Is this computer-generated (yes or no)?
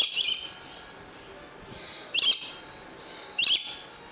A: no